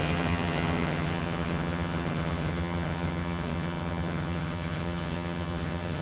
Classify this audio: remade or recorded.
remade